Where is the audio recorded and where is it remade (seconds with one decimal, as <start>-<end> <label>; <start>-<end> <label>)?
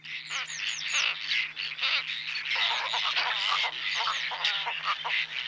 0.0-5.5 recorded